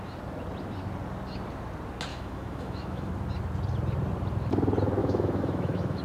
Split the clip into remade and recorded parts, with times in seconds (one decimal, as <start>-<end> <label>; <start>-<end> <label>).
0.0-2.1 recorded; 2.1-3.1 remade; 3.1-5.0 recorded; 5.0-6.0 remade